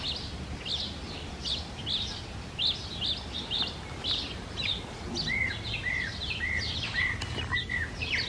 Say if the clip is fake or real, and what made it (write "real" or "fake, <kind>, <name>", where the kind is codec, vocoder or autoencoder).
real